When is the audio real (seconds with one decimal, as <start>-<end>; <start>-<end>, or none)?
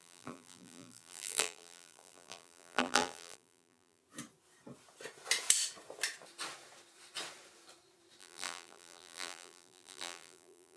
4.0-8.2